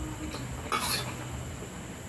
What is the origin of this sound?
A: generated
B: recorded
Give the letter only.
B